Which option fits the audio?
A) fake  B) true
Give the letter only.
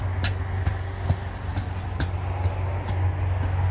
B